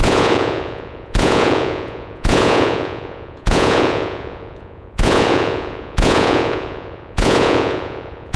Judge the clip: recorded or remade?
remade